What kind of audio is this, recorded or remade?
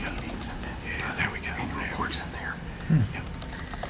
recorded